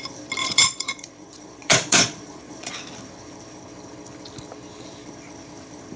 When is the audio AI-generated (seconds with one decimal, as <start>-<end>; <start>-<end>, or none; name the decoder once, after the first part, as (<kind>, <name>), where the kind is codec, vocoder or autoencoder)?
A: 0.4-2.7 (vocoder, Vocos)